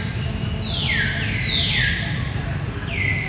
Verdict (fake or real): real